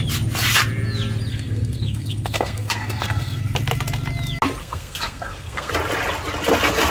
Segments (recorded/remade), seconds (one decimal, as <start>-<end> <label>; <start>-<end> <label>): 0.0-1.3 recorded; 1.3-3.4 remade; 3.4-4.6 recorded; 4.6-5.7 remade; 5.7-6.9 recorded